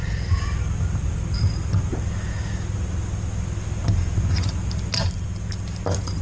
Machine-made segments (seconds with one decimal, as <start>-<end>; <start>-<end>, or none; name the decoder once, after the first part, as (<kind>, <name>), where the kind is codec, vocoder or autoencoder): none